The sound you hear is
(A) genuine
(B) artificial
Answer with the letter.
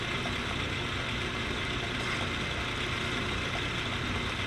A